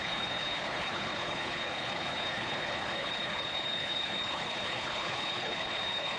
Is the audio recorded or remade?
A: remade